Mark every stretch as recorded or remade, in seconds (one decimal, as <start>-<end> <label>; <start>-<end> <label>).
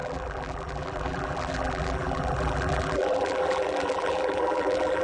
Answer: 0.0-5.0 remade